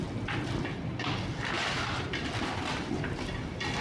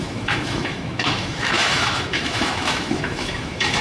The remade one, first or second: second